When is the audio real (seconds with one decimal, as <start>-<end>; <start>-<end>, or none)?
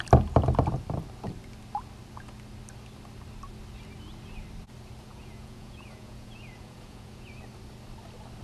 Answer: 0.0-5.1; 7.4-8.4